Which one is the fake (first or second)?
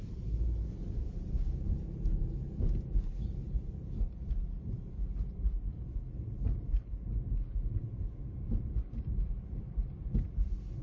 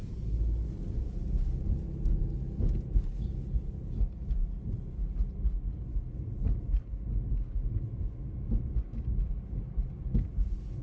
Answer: first